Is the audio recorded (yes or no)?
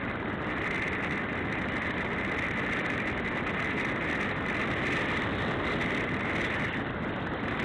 yes